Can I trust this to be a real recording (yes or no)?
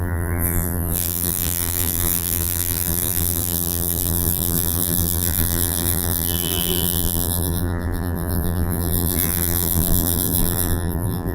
no